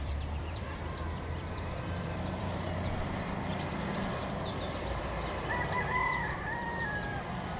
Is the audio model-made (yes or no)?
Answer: yes